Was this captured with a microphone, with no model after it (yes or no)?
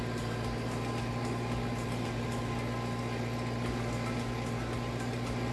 yes